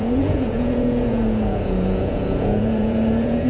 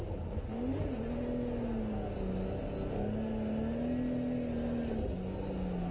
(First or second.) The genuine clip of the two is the second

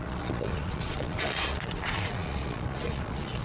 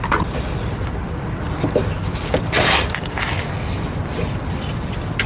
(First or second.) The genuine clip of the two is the second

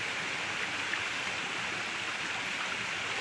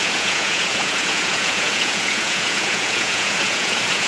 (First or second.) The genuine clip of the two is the first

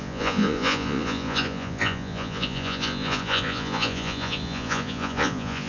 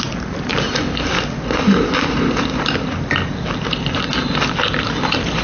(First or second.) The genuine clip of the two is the second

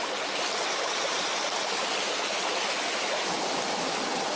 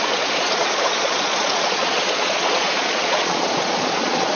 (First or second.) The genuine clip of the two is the first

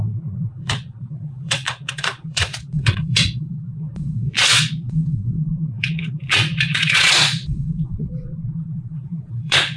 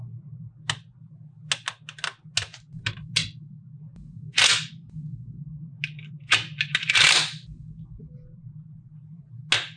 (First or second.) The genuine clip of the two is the second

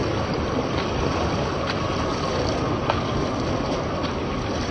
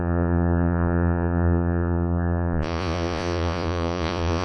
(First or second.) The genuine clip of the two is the first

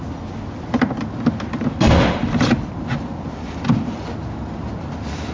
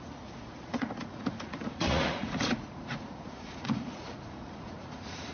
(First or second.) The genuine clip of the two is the first